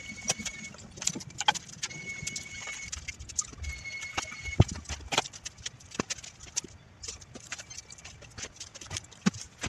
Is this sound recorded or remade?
recorded